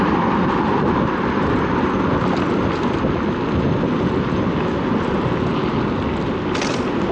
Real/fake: real